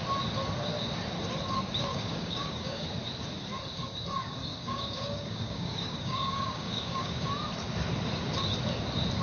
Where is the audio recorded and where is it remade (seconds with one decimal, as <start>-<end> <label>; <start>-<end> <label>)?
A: 0.0-1.9 recorded; 1.9-2.8 remade; 2.8-4.5 recorded; 4.5-7.3 remade; 7.3-9.2 recorded